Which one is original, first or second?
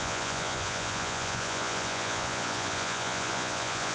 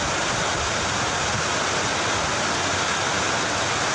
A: second